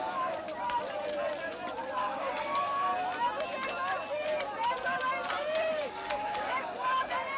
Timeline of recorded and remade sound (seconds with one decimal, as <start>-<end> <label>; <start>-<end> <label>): 0.0-0.5 remade; 0.5-2.0 recorded; 2.0-2.9 remade; 2.9-5.7 recorded; 5.7-7.4 remade